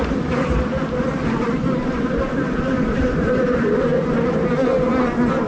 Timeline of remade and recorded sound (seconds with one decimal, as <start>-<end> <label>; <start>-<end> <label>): 0.0-5.5 recorded